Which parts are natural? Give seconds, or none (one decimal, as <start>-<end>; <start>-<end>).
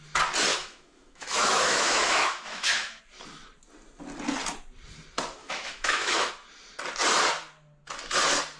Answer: 0.0-0.5; 3.0-5.4; 6.3-8.6